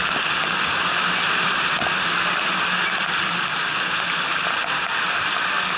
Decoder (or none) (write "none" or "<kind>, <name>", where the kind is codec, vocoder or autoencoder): none